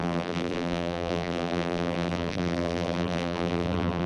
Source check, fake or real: fake